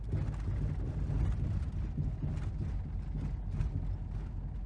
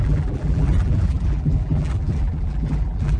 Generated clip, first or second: second